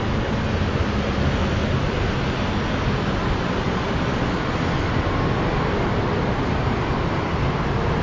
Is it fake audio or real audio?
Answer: real